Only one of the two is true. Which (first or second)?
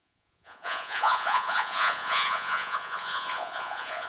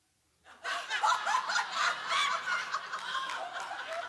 second